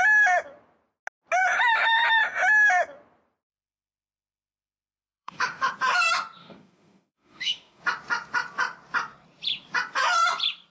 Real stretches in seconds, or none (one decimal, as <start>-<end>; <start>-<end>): 0.0-3.5; 5.7-6.4; 7.8-10.7